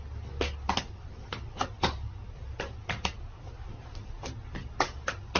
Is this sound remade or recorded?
recorded